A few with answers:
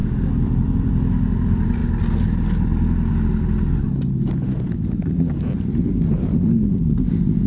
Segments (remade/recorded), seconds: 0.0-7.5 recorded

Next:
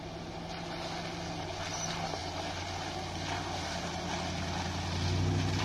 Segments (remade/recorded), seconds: 0.0-5.6 recorded

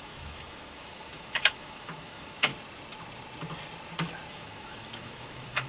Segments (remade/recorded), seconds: 0.0-2.5 remade; 2.5-4.3 recorded; 4.3-5.7 remade

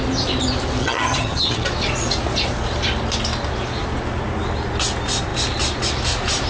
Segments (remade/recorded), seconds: 0.0-0.8 recorded; 0.8-1.7 remade; 1.7-6.5 recorded

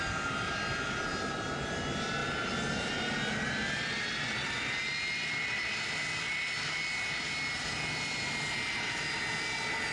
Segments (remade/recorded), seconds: 0.0-9.9 recorded

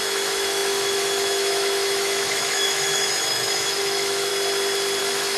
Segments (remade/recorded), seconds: 0.0-4.3 remade; 4.3-5.0 recorded; 5.0-5.4 remade